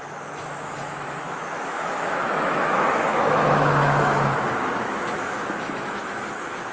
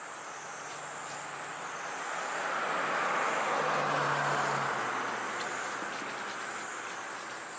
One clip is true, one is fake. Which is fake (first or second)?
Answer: first